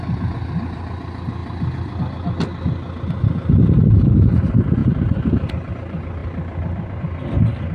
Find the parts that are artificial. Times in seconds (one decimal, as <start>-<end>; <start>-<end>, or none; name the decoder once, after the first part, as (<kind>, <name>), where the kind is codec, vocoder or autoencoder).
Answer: 1.4-2.0 (vocoder, BigVGAN v2); 4.8-5.7; 6.2-7.0